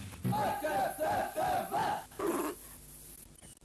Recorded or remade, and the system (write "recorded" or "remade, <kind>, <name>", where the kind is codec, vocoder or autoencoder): recorded